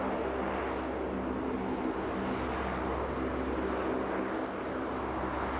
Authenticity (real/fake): real